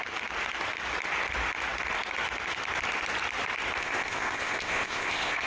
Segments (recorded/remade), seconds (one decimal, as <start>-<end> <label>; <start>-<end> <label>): 0.0-3.8 recorded; 3.8-5.5 remade